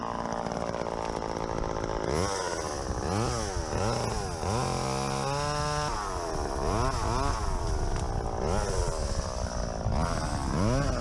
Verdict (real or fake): real